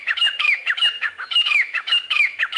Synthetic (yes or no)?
yes